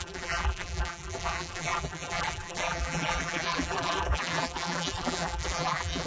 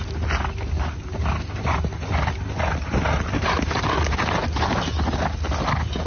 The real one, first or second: second